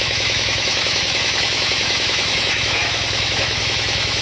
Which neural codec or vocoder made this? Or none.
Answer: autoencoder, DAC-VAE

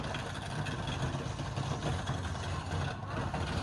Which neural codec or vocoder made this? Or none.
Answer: none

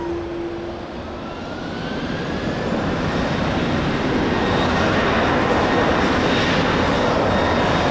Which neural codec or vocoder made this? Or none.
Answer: none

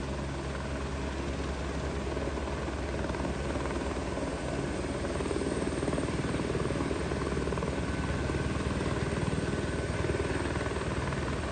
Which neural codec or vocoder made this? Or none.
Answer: none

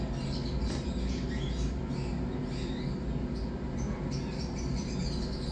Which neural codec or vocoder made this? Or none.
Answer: none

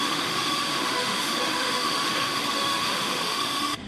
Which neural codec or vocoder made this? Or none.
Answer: autoencoder, DAC-VAE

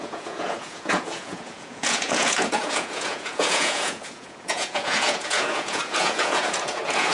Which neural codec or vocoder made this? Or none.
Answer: vocoder, Vocos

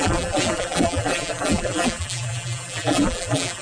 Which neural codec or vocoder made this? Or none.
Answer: vocoder, BigVGAN v2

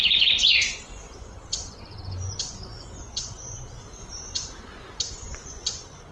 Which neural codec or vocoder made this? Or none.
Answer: vocoder, Vocos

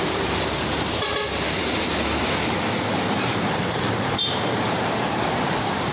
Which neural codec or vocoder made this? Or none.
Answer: vocoder, BigVGAN v2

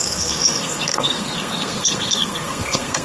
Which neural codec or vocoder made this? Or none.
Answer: codec, SNAC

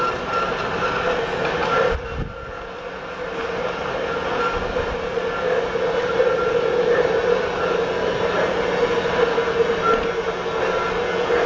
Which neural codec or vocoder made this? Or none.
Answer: none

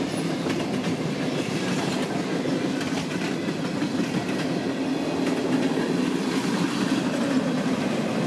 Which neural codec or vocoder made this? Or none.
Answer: none